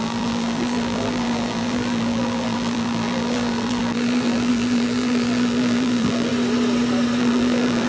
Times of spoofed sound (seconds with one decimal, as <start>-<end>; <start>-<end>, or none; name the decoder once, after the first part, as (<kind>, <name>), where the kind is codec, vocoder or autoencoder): 0.0-6.3 (vocoder, BigVGAN v2); 7.2-7.9